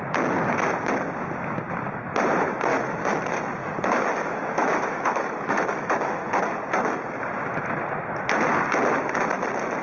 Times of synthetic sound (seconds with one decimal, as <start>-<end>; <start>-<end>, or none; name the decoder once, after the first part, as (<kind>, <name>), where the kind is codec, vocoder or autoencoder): 2.7-3.2 (autoencoder, DAC-VAE); 3.6-6.4